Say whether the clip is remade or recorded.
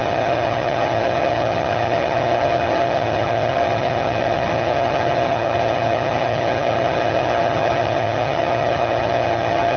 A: remade